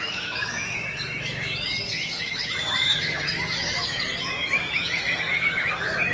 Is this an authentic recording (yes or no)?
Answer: no